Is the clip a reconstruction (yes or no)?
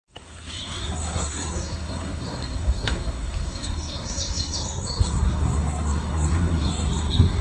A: yes